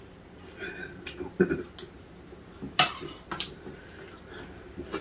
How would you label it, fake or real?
real